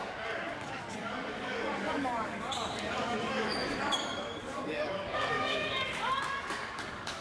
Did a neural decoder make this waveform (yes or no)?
yes